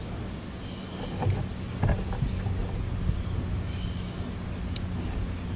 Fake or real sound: real